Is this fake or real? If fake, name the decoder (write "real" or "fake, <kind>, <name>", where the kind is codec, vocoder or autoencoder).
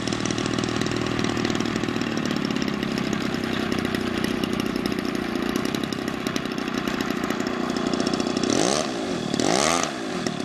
real